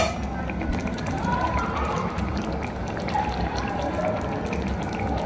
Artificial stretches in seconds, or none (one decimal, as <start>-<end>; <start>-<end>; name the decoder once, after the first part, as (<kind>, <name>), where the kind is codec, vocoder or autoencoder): 0.8-2.4 (vocoder, BigVGAN v2); 2.8-4.0